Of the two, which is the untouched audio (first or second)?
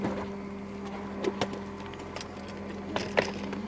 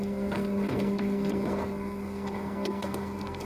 first